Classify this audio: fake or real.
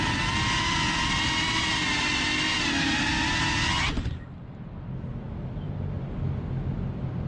real